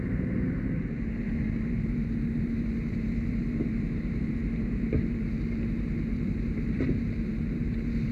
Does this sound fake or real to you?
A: fake